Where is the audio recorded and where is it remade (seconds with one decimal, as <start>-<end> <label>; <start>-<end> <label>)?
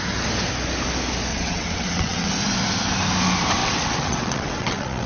0.0-1.3 recorded; 1.3-2.3 remade; 2.3-3.6 recorded; 3.6-5.1 remade